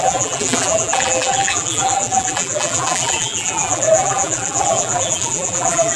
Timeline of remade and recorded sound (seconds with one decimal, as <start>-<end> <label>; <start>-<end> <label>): 0.0-6.0 remade